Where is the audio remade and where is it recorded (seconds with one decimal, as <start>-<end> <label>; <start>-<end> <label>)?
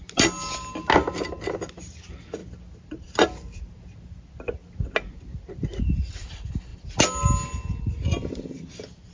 0.0-9.1 recorded